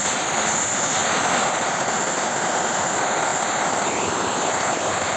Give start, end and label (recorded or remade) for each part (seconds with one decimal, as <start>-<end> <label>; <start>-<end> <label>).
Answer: 0.0-1.0 recorded; 1.0-2.7 remade; 2.7-3.3 recorded; 3.3-5.2 remade

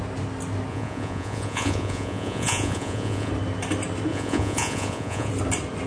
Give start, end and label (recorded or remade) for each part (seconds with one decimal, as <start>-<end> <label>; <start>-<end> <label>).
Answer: 0.0-0.7 recorded; 0.7-3.3 remade; 3.3-4.1 recorded; 4.1-5.3 remade; 5.3-5.9 recorded

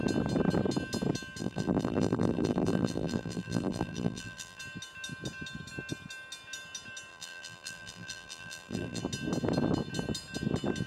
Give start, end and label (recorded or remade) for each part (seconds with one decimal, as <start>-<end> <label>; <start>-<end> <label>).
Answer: 0.0-1.4 recorded; 1.4-4.6 remade; 4.6-7.1 recorded; 7.1-9.0 remade; 9.0-10.9 recorded

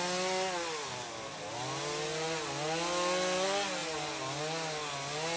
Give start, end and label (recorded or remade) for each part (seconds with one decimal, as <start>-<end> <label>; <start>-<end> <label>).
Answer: 0.0-5.4 recorded

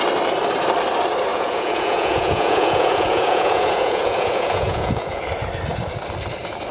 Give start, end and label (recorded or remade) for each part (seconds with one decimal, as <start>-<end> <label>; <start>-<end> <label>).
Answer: 0.0-1.3 recorded; 1.3-5.3 remade; 5.3-6.7 recorded

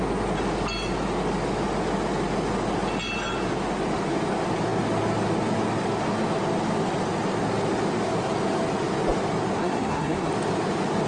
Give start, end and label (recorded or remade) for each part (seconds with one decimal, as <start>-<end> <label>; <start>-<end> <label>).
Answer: 0.0-9.6 recorded; 9.6-10.3 remade; 10.3-11.1 recorded

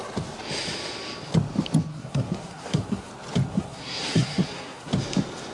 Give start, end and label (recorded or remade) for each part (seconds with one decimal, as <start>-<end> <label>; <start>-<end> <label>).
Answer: 0.0-1.9 recorded; 1.9-3.1 remade; 3.1-3.5 recorded; 3.5-4.9 remade; 4.9-5.5 recorded

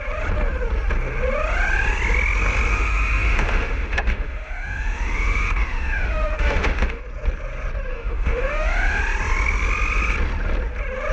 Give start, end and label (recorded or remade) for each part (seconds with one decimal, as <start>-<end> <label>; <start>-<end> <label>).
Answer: 0.0-2.7 recorded; 2.7-7.0 remade; 7.0-7.9 recorded; 7.9-9.0 remade; 9.0-11.1 recorded